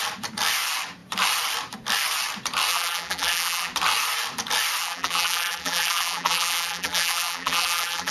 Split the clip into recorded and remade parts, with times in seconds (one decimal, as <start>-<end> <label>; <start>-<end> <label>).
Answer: 0.0-2.7 recorded; 2.7-3.7 remade; 3.7-4.8 recorded; 4.8-8.1 remade